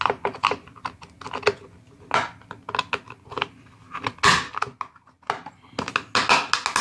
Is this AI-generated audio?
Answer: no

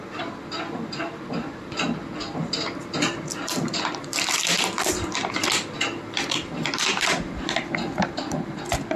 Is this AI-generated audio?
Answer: yes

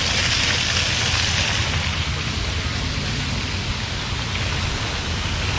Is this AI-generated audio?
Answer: no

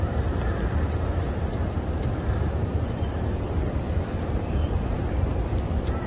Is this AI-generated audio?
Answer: yes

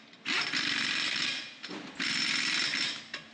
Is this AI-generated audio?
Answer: no